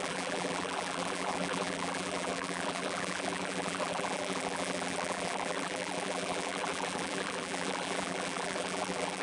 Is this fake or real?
fake